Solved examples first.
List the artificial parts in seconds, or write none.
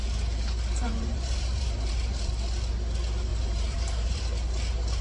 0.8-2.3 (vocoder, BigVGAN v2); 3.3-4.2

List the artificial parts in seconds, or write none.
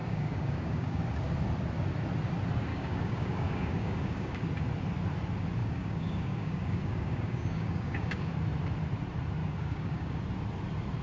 0.0-1.0 (codec, DAC); 2.7-4.4; 5.6-8.3; 9.4-10.2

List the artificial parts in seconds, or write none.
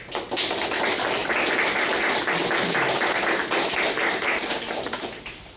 none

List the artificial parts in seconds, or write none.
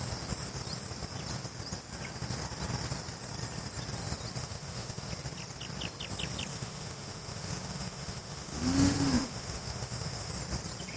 4.4-5.1 (autoencoder, DAC-VAE); 6.5-10.3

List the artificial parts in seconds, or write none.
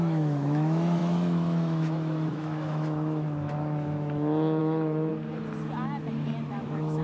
0.0-5.1 (autoencoder, DAC-VAE); 6.5-7.0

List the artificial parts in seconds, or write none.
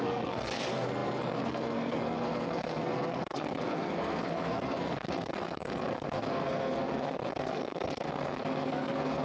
0.0-9.2 (codec, SNAC)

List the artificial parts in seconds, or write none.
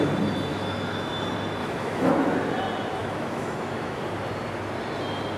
0.5-1.1 (autoencoder, DAC-VAE); 1.6-2.1; 3.0-4.0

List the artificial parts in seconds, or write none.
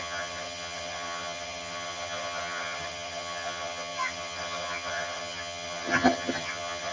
0.0-6.9 (vocoder, HiFi-GAN)